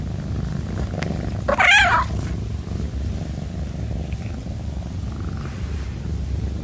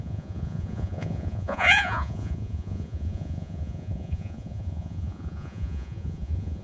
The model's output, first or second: second